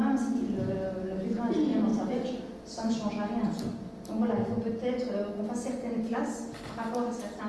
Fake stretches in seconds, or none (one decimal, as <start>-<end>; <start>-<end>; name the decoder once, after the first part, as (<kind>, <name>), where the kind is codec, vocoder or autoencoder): none